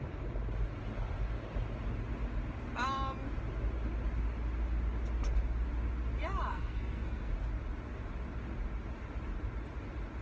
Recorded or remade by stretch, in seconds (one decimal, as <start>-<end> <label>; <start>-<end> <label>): 0.0-6.5 recorded; 6.5-7.3 remade; 7.3-10.2 recorded